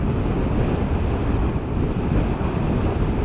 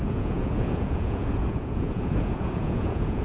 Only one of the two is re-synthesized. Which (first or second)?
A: second